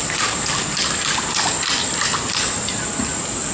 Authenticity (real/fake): real